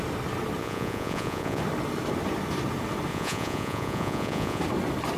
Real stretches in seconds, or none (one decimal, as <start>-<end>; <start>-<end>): 0.0-0.6; 1.6-3.1; 4.6-5.2